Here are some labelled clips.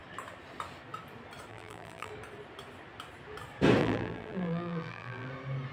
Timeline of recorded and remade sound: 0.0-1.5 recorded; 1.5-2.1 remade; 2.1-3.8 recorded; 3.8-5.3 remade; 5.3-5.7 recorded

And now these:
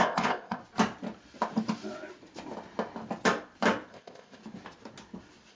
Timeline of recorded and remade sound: 0.0-0.6 remade; 0.6-3.9 recorded; 3.9-4.4 remade; 4.4-5.5 recorded

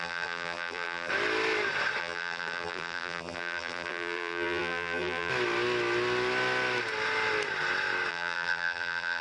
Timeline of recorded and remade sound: 0.0-1.1 remade; 1.1-2.0 recorded; 2.0-5.3 remade; 5.3-8.1 recorded; 8.1-9.2 remade

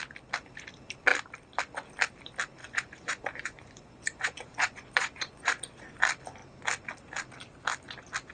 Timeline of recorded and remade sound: 0.0-2.6 recorded; 2.6-6.0 remade; 6.0-8.3 recorded